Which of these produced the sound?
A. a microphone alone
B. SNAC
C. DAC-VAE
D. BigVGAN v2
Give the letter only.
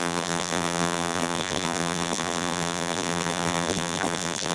D